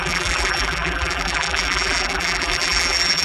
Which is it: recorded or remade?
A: remade